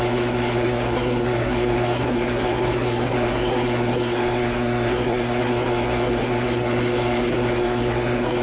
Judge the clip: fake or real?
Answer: fake